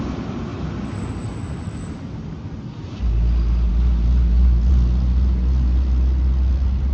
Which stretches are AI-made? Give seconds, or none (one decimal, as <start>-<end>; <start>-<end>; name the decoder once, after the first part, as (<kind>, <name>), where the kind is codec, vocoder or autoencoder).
none